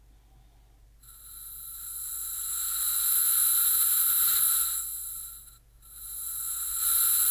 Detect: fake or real real